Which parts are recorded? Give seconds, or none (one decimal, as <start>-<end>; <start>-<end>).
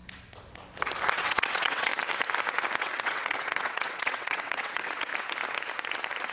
0.0-1.1; 1.9-2.8; 5.1-6.3